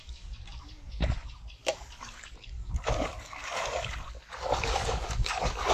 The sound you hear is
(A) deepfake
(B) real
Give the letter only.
A